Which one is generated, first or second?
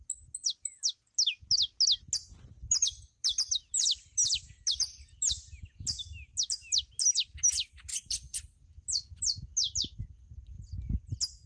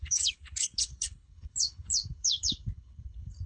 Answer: second